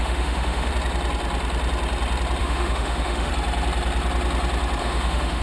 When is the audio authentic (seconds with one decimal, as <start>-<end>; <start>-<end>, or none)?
0.7-2.4; 3.3-4.8